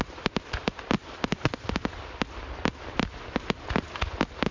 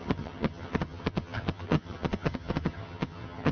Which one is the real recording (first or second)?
first